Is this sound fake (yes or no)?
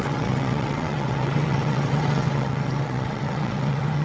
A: yes